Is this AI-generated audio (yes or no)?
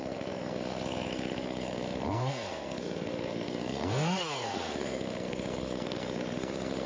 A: yes